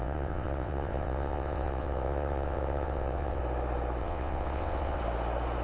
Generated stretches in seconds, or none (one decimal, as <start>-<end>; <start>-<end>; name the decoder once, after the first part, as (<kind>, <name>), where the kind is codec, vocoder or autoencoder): 0.0-3.4 (vocoder, WaveNeXt); 4.0-5.0